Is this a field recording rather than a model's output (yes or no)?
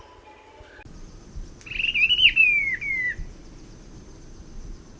yes